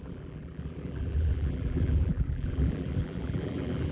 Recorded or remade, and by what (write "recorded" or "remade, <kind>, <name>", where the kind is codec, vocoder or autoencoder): remade, vocoder, BigVGAN v2